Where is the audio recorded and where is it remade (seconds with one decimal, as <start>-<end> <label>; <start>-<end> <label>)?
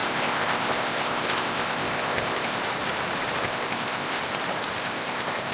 0.0-2.6 remade; 2.6-3.4 recorded; 3.4-4.2 remade; 4.2-4.8 recorded; 4.8-5.5 remade